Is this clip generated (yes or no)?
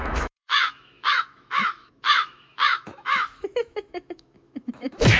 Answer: yes